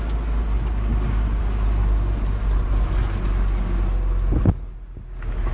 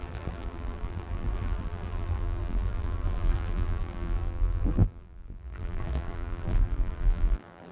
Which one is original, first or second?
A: first